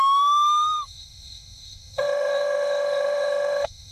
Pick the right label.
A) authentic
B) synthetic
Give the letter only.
B